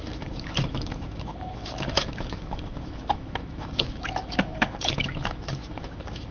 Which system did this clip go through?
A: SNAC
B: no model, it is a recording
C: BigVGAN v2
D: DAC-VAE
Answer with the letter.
D